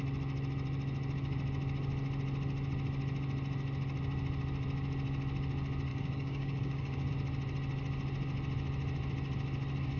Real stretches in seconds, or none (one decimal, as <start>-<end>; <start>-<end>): 0.0-5.9; 7.1-10.0